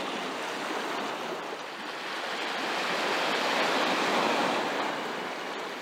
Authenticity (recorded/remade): recorded